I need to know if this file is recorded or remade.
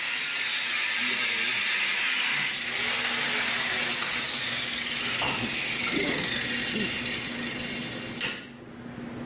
recorded